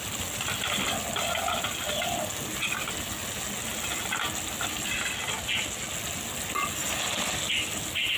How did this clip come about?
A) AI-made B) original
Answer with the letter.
B